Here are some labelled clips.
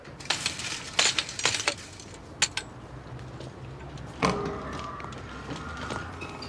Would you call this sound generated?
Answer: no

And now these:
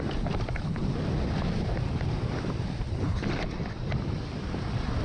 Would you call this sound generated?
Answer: no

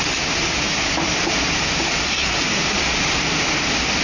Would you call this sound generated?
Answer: no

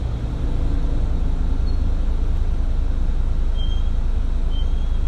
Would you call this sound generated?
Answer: no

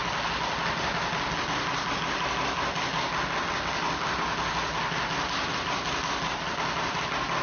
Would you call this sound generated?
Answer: no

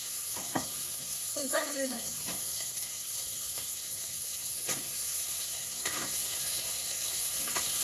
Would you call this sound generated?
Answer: yes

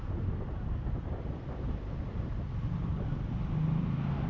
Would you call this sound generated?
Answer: no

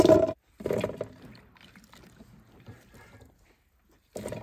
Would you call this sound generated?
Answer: no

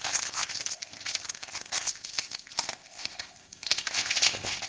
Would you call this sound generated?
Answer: yes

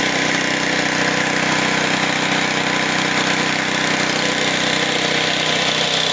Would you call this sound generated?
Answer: no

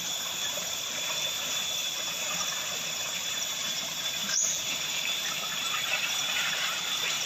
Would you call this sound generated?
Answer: yes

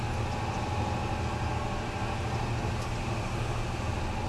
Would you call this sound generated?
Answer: no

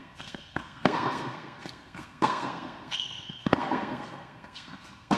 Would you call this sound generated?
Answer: yes